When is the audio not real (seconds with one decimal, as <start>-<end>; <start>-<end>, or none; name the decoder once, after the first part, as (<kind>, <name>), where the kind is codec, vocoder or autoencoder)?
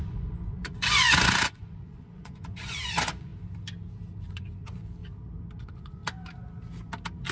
0.0-3.3 (vocoder, Vocos); 4.2-5.0; 5.6-6.0